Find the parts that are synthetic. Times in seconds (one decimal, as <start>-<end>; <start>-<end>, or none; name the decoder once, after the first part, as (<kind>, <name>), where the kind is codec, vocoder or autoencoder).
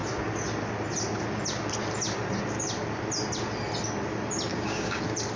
4.5-5.0 (codec, DAC)